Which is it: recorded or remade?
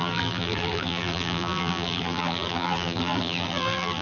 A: remade